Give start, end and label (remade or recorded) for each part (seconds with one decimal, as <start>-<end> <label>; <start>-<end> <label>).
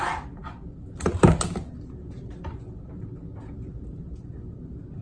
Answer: 0.0-5.0 recorded